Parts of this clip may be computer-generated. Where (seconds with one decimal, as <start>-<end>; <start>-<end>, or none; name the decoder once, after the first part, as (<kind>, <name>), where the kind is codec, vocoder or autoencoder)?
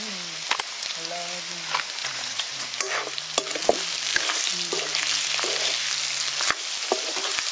2.0-2.7 (vocoder, Vocos)